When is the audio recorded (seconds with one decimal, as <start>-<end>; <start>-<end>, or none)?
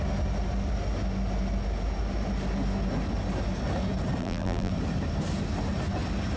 0.0-4.2; 4.7-6.4